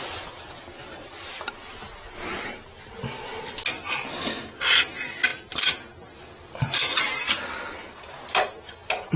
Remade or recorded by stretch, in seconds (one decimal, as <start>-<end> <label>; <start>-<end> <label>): 0.0-9.2 recorded